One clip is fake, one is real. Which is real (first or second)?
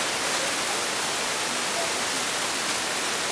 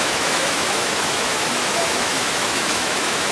first